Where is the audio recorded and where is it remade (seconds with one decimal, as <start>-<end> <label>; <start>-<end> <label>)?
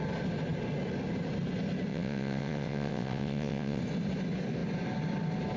0.0-1.9 recorded; 1.9-3.8 remade; 3.8-5.6 recorded